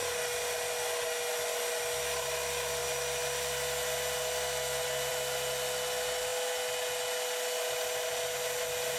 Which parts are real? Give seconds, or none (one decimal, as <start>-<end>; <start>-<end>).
0.0-9.0